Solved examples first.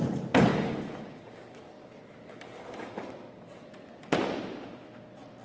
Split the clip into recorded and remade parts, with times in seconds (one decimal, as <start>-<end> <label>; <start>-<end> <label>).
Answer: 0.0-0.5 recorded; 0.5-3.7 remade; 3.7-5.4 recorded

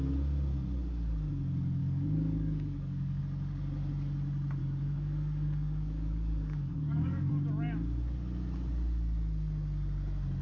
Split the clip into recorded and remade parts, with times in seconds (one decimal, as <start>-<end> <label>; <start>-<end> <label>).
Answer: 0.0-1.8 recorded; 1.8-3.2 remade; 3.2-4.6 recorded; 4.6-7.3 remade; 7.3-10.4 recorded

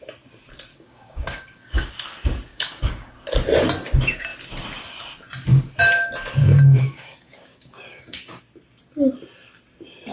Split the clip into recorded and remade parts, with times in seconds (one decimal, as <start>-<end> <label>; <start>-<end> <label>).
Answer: 0.0-0.7 recorded; 0.7-1.9 remade; 1.9-2.5 recorded; 2.5-3.1 remade; 3.1-6.4 recorded; 6.4-8.4 remade; 8.4-10.1 recorded